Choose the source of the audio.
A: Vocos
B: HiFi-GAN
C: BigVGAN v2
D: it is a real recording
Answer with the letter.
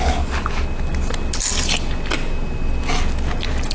D